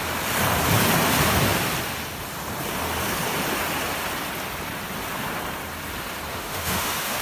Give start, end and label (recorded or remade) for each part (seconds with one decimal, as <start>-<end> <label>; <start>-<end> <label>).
0.0-6.3 recorded; 6.3-7.2 remade